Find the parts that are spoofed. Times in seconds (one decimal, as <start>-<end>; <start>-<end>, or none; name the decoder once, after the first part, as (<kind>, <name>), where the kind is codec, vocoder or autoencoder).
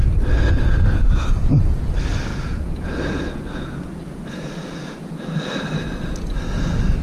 2.3-5.4 (vocoder, Vocos)